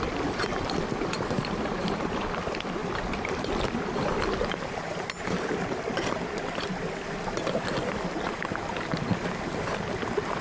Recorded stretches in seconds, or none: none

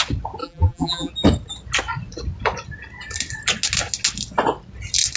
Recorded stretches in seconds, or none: 0.0-0.4; 1.1-5.2

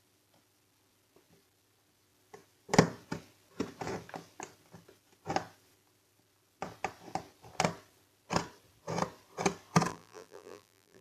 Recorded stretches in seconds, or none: 0.0-9.9

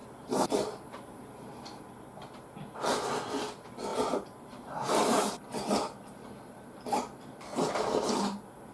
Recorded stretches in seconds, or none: 1.8-3.9; 5.3-8.7